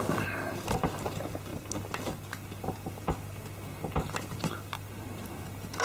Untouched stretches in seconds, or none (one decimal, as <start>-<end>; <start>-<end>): 0.0-5.8

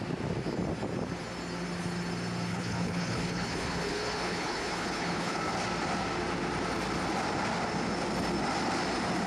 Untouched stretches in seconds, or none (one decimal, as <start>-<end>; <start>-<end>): 0.0-2.5; 5.4-9.3

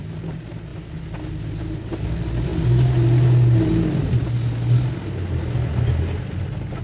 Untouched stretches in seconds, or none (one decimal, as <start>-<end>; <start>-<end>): 0.7-1.3; 2.5-6.8